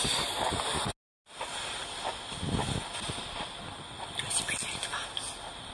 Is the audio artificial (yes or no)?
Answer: no